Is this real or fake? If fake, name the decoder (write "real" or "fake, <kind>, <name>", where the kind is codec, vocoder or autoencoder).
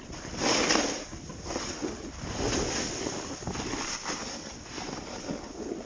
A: real